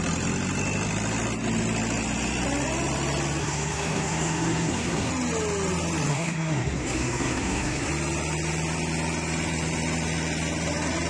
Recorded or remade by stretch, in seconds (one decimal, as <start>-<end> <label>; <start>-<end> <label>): 0.0-3.4 recorded; 3.4-5.1 remade; 5.1-6.1 recorded; 6.1-7.9 remade; 7.9-11.1 recorded